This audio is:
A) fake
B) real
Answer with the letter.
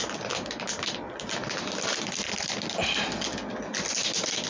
B